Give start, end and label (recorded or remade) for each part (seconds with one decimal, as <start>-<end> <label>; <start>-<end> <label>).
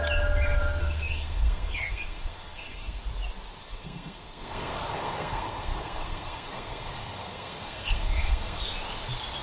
0.0-0.8 recorded; 0.8-3.0 remade; 3.0-3.6 recorded; 3.6-8.6 remade; 8.6-9.4 recorded